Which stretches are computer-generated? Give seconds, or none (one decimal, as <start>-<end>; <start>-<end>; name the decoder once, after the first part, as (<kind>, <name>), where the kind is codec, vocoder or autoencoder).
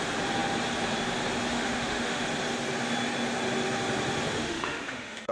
1.5-2.2 (autoencoder, DAC-VAE); 4.4-5.3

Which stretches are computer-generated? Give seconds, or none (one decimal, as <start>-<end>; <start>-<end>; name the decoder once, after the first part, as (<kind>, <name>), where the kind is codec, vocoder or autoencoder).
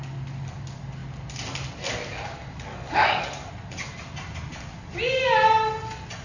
2.7-3.5 (codec, DAC)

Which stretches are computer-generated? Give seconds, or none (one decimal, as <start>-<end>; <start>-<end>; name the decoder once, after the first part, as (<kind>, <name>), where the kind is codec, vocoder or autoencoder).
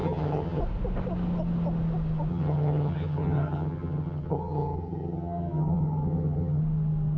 0.0-0.6 (vocoder, HiFi-GAN); 2.3-6.6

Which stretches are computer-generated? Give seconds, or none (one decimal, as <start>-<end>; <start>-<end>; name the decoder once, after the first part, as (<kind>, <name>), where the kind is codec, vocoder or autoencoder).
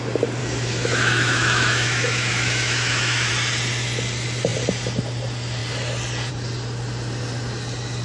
0.4-3.3 (autoencoder, DAC-VAE)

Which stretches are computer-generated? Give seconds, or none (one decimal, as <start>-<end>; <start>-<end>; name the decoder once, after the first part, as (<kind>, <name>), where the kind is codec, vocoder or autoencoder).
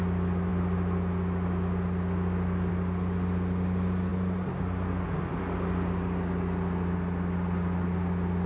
none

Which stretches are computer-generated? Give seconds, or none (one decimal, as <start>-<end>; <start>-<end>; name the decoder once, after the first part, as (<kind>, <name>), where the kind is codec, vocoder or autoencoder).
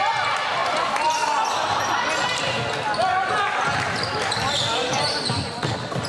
none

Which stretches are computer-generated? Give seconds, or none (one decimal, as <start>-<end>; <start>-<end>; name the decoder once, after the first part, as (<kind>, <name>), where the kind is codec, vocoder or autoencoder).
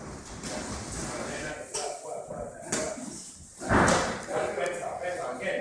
none